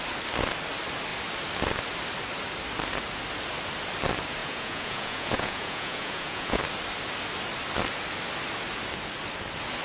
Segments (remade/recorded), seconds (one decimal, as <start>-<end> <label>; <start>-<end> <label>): 0.0-4.4 recorded; 4.4-6.6 remade; 6.6-9.8 recorded